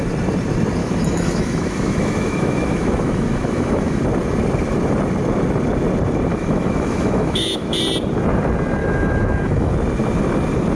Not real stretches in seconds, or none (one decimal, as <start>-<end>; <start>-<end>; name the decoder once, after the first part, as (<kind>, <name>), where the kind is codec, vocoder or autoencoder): 0.8-4.0 (autoencoder, DAC-VAE); 6.3-7.8; 8.8-9.7